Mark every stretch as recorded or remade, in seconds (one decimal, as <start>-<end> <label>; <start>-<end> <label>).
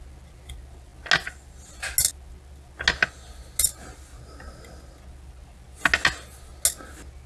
0.0-7.3 recorded